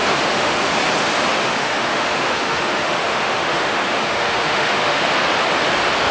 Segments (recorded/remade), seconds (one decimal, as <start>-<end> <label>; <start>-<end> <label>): 0.0-0.6 remade; 0.6-1.3 recorded; 1.3-5.0 remade; 5.0-6.1 recorded